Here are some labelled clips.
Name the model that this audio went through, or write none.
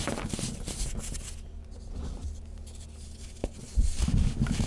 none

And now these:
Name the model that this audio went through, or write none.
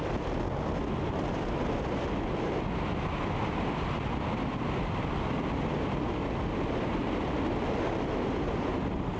none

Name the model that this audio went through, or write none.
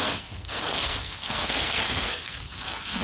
codec, SNAC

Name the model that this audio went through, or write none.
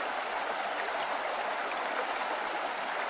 none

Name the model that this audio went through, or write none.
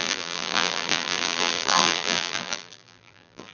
vocoder, BigVGAN v2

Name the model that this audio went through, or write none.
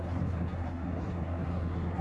codec, SNAC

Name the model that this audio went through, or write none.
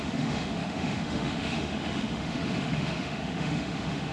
autoencoder, DAC-VAE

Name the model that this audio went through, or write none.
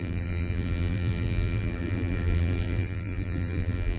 vocoder, BigVGAN v2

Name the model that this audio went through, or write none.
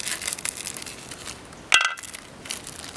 none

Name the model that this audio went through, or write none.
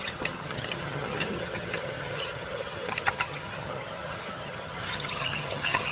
vocoder, HiFi-GAN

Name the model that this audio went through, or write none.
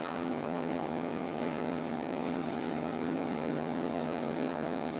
vocoder, HiFi-GAN